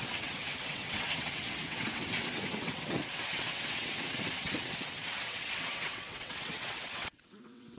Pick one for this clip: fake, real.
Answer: fake